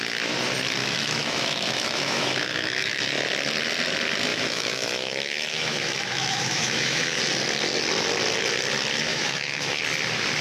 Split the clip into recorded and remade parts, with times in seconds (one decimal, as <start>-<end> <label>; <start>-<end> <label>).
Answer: 0.0-0.8 recorded; 0.8-3.0 remade; 3.0-4.3 recorded; 4.3-7.2 remade; 7.2-9.1 recorded; 9.1-9.8 remade; 9.8-10.4 recorded